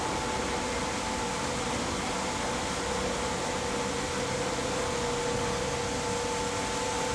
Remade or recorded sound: recorded